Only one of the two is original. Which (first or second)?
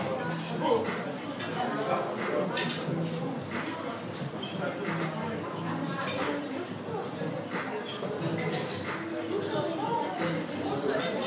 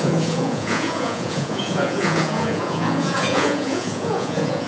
first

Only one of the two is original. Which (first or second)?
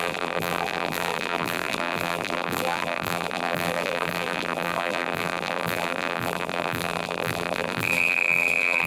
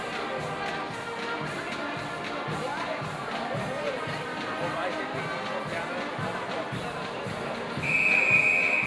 second